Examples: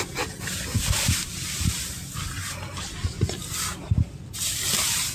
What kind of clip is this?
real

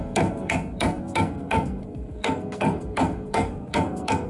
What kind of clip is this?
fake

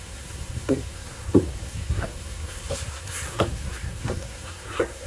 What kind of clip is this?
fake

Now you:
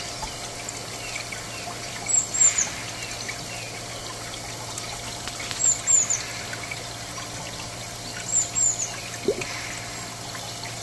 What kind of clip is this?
real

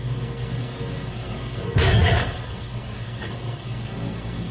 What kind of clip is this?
fake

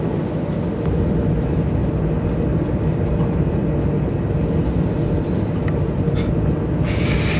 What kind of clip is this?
real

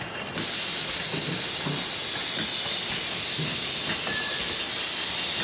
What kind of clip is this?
real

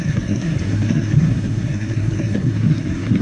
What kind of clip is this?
fake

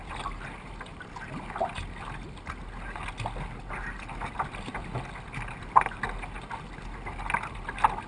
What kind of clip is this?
real